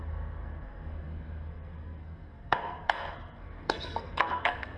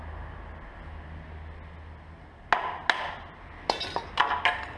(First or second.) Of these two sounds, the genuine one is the second